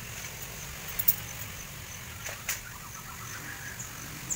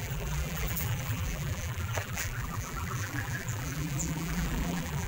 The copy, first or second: second